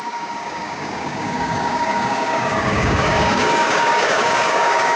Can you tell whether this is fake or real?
fake